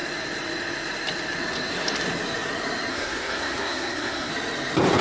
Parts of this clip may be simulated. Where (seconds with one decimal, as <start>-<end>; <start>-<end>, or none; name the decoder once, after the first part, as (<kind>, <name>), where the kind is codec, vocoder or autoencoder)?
2.9-4.3 (codec, SNAC)